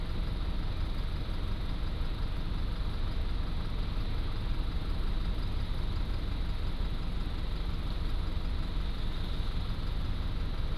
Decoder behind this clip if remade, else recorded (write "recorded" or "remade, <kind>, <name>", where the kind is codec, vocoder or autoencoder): recorded